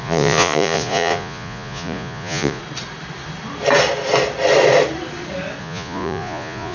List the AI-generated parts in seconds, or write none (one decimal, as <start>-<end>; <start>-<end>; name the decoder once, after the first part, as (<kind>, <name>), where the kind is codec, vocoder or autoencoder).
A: 0.0-2.6 (vocoder, Vocos); 5.6-6.7